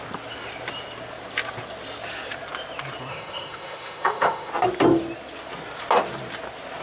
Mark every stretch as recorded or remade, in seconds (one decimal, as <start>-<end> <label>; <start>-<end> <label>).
0.0-3.1 recorded; 3.1-4.5 remade; 4.5-6.8 recorded